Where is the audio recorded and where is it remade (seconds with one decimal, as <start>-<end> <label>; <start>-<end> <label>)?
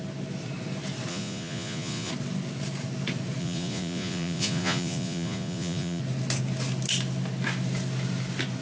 0.0-1.1 recorded; 1.1-2.1 remade; 2.1-3.4 recorded; 3.4-6.0 remade; 6.0-8.6 recorded